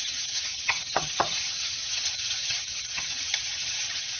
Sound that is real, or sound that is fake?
fake